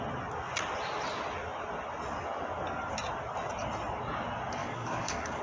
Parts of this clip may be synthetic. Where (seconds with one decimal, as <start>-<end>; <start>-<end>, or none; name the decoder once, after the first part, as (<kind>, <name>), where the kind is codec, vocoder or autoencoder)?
4.6-5.4 (codec, DAC)